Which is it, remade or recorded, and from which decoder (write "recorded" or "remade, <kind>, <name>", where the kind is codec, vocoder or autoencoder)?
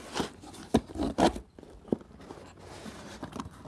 recorded